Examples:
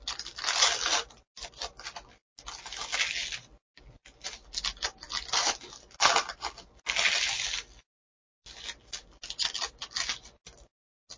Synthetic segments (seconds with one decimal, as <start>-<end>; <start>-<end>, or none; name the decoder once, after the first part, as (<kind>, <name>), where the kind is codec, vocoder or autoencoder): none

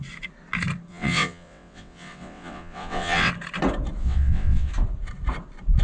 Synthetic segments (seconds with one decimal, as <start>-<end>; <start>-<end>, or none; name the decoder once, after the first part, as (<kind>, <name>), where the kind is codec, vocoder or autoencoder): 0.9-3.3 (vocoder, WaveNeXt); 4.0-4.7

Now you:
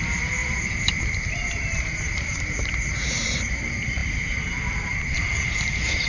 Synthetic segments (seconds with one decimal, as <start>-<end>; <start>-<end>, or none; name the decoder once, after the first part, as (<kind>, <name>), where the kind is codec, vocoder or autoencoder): 0.0-6.1 (vocoder, BigVGAN v2)

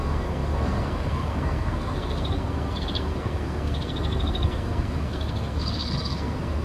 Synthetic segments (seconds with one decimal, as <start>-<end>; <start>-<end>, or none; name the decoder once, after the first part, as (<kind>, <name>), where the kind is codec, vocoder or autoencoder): 0.0-6.6 (codec, SNAC)